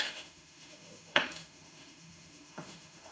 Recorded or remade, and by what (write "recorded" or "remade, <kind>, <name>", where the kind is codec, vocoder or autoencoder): remade, autoencoder, DAC-VAE